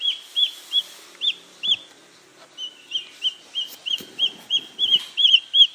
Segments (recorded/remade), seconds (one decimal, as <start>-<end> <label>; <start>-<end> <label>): 0.0-2.0 remade; 2.0-4.4 recorded; 4.4-5.7 remade